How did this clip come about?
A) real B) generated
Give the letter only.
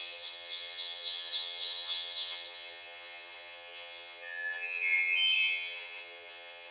B